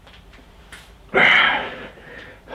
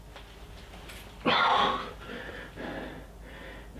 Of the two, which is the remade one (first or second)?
first